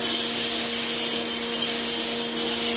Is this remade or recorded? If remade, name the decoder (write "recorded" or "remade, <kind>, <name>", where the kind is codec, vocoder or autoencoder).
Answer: recorded